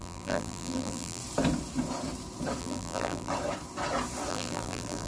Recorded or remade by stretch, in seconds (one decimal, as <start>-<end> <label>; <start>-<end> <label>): 0.0-1.2 remade; 1.2-2.6 recorded; 2.6-3.3 remade; 3.3-4.3 recorded; 4.3-5.1 remade